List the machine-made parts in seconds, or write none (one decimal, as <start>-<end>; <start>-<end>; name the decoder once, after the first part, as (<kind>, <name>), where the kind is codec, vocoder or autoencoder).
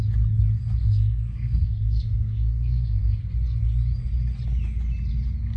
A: 0.8-3.2 (codec, SNAC)